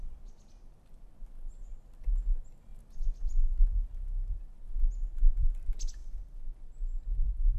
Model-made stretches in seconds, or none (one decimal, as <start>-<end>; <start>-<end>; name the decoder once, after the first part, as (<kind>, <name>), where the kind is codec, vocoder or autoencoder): none